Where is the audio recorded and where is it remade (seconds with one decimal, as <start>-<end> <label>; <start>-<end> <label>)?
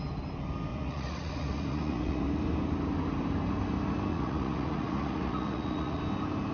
0.0-0.7 recorded; 0.7-2.2 remade; 2.2-4.1 recorded; 4.1-6.0 remade; 6.0-6.5 recorded